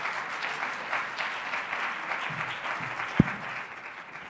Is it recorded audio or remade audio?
recorded